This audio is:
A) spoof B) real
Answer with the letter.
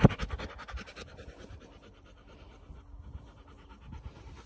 B